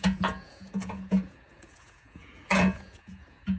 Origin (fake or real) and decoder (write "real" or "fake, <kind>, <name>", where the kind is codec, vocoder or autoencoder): fake, vocoder, Vocos